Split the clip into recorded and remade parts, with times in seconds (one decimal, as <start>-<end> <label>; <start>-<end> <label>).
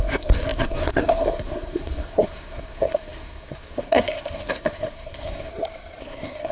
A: 0.0-5.5 remade; 5.5-6.0 recorded; 6.0-6.5 remade